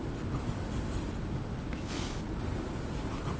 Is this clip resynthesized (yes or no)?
no